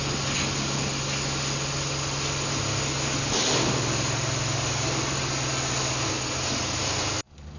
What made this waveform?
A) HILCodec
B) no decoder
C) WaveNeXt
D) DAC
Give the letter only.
B